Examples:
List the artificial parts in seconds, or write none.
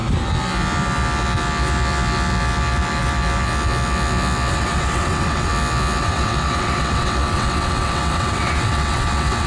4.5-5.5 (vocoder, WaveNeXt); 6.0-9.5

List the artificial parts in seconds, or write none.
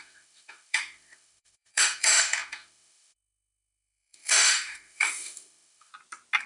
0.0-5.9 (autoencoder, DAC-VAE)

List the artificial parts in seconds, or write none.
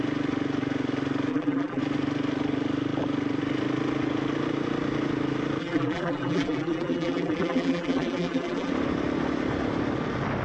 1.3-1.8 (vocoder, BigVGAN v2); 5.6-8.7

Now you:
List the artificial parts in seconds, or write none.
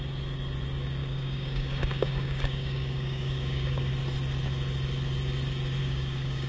1.0-3.9 (codec, DAC); 5.8-6.5